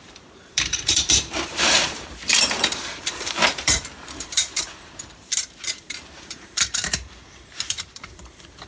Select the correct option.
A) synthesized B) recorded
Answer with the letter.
A